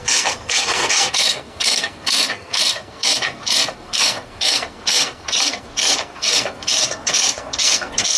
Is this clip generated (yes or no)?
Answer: yes